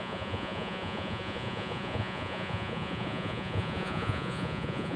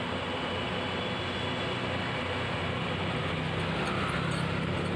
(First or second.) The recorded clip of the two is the second